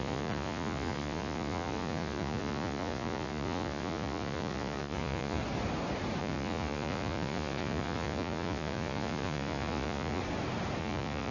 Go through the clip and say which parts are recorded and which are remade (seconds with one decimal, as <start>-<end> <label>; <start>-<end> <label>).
0.0-5.4 remade; 5.4-6.2 recorded; 6.2-10.2 remade; 10.2-10.8 recorded; 10.8-11.3 remade